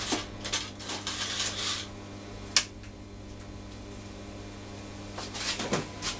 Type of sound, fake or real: real